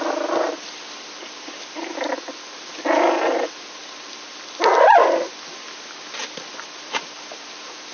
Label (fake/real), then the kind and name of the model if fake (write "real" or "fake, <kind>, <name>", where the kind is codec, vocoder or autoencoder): real